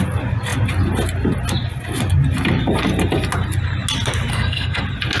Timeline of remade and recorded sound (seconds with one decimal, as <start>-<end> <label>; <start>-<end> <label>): 0.0-4.3 recorded; 4.3-4.8 remade; 4.8-5.2 recorded